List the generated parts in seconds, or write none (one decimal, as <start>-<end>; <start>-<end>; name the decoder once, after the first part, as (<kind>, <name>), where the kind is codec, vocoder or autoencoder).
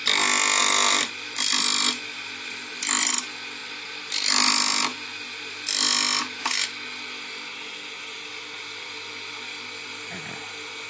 0.6-3.1 (vocoder, BigVGAN v2); 8.0-10.2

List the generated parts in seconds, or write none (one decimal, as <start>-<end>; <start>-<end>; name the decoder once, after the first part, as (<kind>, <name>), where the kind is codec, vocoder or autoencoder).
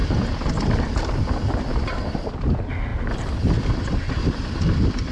none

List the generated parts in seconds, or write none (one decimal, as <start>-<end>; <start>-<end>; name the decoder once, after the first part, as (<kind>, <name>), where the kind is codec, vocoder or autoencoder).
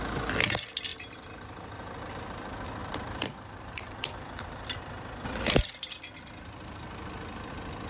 0.9-2.1 (vocoder, BigVGAN v2); 2.8-7.5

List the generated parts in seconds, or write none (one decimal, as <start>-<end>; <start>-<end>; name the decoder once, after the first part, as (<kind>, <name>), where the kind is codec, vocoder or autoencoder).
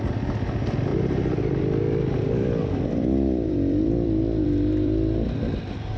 0.0-6.0 (vocoder, BigVGAN v2)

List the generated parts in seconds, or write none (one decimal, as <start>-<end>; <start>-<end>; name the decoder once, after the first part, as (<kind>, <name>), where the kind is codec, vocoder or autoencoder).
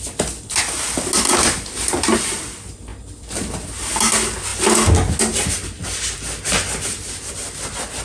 none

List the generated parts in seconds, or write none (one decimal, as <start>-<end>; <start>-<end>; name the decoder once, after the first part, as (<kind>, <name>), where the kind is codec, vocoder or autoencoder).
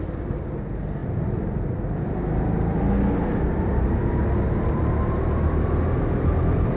none